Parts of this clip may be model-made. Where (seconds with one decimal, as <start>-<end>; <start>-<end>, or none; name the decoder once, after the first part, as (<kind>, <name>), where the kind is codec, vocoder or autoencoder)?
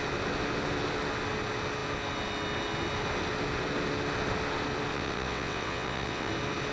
4.9-6.3 (vocoder, WaveNeXt)